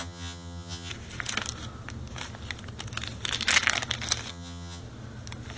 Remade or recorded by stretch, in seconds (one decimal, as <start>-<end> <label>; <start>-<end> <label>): 0.0-0.9 remade; 0.9-4.3 recorded; 4.3-4.8 remade; 4.8-5.6 recorded